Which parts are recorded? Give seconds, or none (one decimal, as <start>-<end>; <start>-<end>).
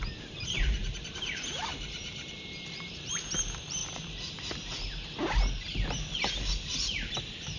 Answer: 3.8-7.1